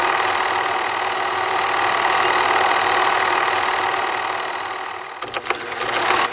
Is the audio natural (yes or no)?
yes